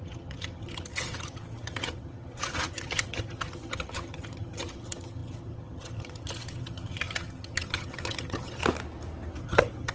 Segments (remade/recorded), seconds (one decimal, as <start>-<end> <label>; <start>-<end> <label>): 0.0-8.6 remade; 8.6-9.4 recorded; 9.4-9.9 remade